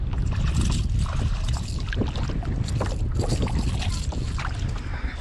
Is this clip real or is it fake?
real